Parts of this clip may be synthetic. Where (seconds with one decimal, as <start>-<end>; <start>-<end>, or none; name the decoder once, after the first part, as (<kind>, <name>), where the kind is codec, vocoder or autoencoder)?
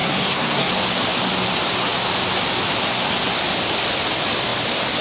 0.0-0.7 (codec, SNAC)